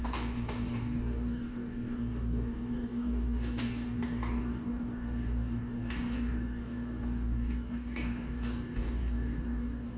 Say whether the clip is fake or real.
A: fake